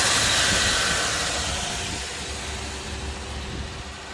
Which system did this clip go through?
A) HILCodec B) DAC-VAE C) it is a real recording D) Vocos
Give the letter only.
C